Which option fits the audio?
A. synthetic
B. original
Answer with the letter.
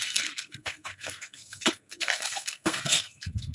A